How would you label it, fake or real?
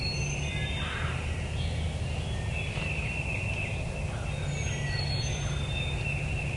real